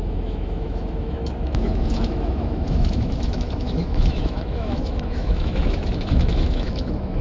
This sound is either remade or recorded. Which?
remade